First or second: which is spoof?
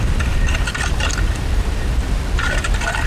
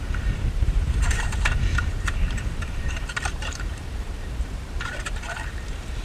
second